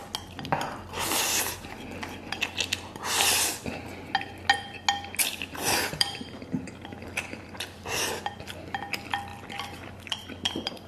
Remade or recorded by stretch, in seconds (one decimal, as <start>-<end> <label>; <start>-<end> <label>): 0.0-5.2 recorded; 5.2-10.9 remade